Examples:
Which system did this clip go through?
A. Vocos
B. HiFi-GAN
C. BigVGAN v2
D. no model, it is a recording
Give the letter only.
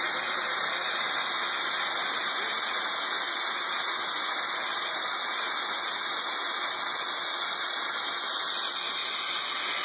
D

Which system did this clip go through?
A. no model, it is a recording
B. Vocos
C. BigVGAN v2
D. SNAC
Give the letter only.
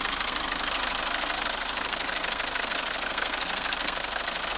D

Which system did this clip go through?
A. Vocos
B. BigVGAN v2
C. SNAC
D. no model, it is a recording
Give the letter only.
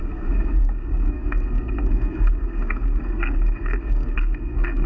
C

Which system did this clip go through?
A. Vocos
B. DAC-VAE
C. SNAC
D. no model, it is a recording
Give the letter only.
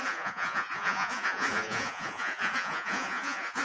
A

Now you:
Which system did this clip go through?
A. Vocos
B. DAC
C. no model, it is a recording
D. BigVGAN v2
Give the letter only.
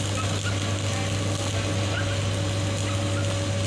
C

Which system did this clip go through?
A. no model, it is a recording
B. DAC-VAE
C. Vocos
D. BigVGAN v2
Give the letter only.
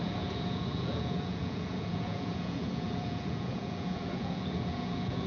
C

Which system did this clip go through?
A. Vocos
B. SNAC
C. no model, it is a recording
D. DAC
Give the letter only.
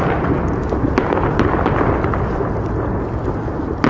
C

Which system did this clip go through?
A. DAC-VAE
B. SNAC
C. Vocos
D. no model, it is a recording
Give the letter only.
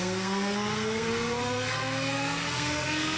B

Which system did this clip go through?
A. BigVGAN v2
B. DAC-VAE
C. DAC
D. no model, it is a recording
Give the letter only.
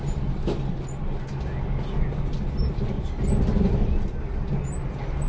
D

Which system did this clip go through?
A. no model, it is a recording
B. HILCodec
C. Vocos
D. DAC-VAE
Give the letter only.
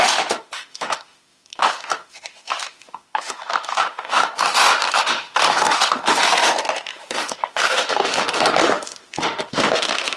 D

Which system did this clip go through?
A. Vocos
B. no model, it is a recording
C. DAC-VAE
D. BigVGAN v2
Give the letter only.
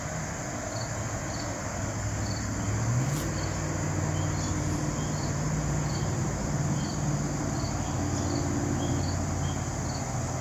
B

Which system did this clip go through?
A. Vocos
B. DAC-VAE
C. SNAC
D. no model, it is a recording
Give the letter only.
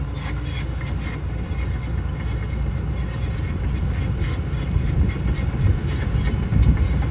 D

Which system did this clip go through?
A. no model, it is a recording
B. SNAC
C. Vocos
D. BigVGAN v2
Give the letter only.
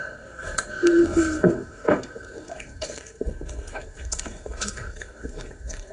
B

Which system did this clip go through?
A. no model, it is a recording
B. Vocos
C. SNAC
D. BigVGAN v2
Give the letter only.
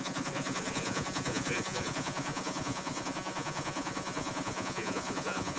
B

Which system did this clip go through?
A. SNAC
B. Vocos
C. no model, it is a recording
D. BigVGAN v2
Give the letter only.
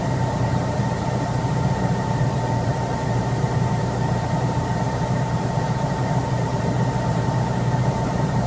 D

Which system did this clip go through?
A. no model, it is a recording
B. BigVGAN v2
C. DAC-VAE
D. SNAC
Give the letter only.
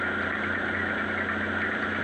A